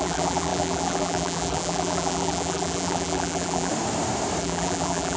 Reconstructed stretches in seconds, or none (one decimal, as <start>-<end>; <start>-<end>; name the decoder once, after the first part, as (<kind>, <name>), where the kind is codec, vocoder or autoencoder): 0.0-3.7 (vocoder, BigVGAN v2); 4.4-5.2

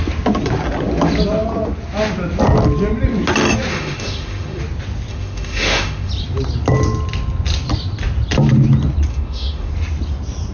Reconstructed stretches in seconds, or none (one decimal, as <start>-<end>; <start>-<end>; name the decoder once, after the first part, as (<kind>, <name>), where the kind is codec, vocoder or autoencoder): 3.7-4.6 (autoencoder, DAC-VAE); 5.1-6.1; 9.1-9.7

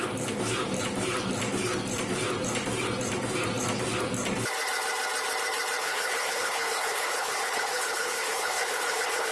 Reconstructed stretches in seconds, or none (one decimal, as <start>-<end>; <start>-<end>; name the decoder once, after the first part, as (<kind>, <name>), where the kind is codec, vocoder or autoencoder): 5.8-9.3 (codec, HILCodec)

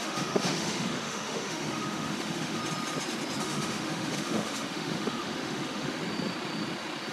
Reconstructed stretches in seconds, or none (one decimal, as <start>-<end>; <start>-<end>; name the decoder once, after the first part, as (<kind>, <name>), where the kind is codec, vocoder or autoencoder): 0.0-2.6 (autoencoder, DAC-VAE); 3.4-6.0

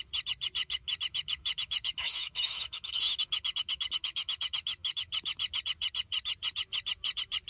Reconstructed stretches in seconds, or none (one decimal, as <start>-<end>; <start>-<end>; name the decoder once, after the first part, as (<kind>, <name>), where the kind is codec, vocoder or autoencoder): 0.6-5.1 (autoencoder, DAC-VAE)

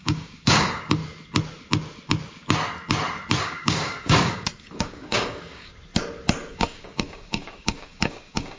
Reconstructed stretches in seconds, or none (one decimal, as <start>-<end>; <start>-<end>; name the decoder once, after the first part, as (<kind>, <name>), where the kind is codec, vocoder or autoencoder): 0.0-1.0 (codec, DAC); 3.4-5.7; 6.5-8.6